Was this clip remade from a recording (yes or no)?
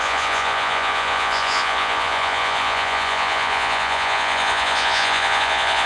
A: yes